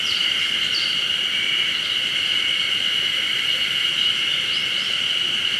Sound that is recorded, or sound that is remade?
remade